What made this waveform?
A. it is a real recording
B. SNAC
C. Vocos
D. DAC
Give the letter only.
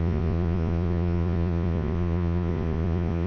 C